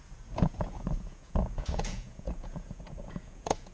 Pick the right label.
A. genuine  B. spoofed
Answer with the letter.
B